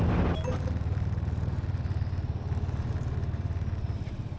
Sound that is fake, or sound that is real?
real